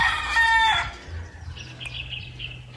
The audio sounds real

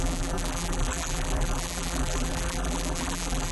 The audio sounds fake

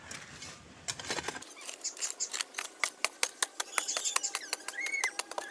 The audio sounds real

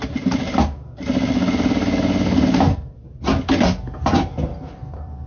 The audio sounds real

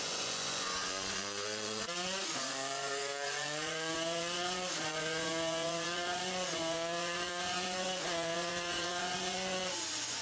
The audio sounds fake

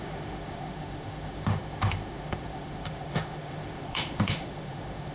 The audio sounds fake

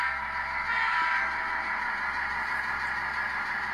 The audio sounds real